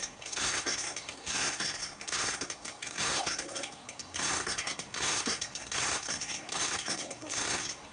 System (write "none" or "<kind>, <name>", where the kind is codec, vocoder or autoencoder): codec, SNAC